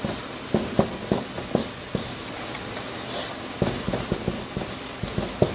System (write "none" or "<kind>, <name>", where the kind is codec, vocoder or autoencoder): none